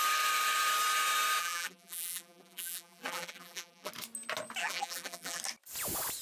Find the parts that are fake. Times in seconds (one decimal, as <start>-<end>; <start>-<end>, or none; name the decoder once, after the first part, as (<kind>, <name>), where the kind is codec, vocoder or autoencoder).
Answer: 1.4-3.9 (vocoder, BigVGAN v2); 4.6-5.4